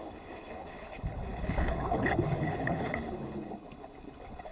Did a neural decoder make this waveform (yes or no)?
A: yes